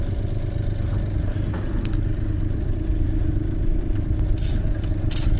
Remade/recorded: recorded